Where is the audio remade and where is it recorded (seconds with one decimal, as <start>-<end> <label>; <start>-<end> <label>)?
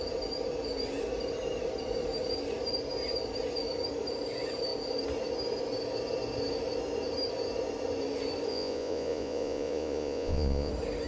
0.0-8.5 recorded; 8.5-10.7 remade; 10.7-11.1 recorded